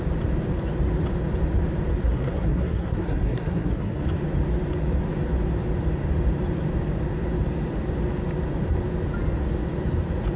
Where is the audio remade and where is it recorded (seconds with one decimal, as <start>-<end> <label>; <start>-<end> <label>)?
0.0-2.0 recorded; 2.0-4.0 remade; 4.0-10.4 recorded